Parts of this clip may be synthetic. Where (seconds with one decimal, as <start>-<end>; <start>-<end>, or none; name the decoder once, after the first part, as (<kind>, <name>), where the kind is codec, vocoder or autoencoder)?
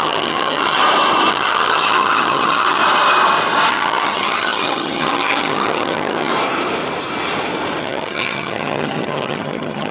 0.0-0.8 (vocoder, HiFi-GAN); 1.3-2.8; 3.7-6.3; 7.8-9.9